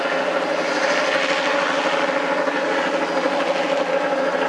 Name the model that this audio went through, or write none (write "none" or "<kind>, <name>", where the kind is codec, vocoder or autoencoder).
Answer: none